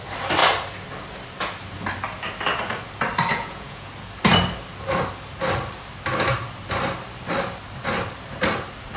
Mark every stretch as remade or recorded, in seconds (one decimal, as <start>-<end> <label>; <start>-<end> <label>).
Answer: 0.0-3.3 recorded; 3.3-3.9 remade; 3.9-9.0 recorded